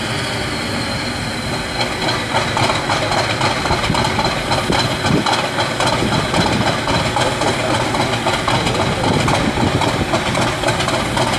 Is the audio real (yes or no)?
yes